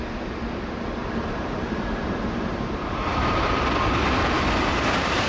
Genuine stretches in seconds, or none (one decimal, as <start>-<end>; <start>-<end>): 0.0-1.0; 4.2-4.7

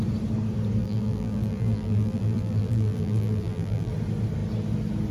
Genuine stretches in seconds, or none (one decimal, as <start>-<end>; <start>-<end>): 0.0-0.8; 3.9-5.1

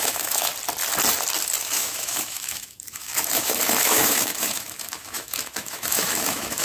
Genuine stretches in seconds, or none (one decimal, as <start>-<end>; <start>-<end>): 0.5-1.6

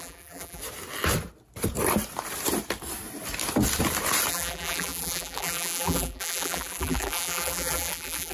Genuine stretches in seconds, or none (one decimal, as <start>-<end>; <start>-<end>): 0.6-4.3

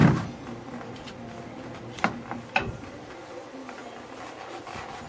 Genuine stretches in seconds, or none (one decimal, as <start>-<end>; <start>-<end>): 0.0-5.1

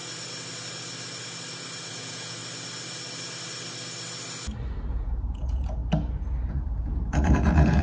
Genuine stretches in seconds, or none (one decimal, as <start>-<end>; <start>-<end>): 0.0-1.9; 2.4-4.9; 5.8-6.5

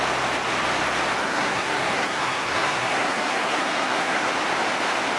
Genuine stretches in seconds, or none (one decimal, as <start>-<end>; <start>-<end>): 0.0-1.2; 4.3-5.2